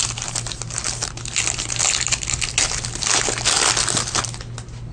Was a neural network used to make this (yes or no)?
no